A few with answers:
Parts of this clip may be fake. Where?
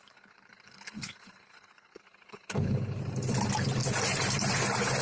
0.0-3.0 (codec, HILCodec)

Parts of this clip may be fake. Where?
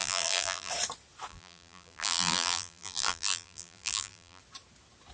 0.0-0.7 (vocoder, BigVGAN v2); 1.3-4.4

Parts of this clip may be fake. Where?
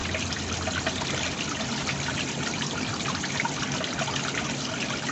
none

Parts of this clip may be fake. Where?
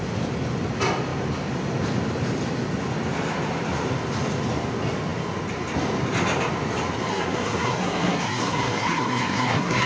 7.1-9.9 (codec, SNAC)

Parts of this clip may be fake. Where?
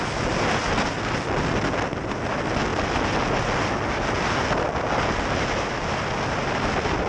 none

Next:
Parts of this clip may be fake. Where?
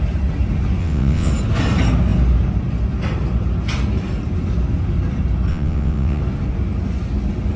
0.8-1.3 (vocoder, WaveNeXt); 5.5-6.2